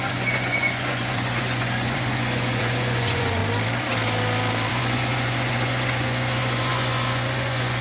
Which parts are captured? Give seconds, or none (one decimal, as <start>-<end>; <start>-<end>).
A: 3.4-4.7